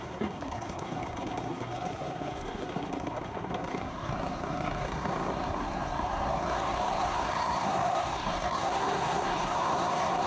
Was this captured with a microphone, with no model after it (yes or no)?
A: no